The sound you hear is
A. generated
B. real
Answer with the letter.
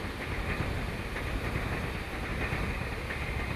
B